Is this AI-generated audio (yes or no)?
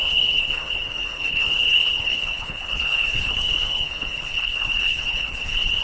yes